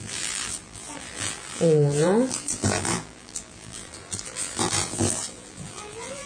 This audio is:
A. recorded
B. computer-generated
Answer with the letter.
B